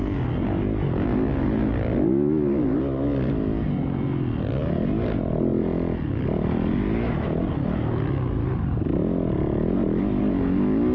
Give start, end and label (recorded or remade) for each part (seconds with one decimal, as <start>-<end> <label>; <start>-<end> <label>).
0.0-10.9 recorded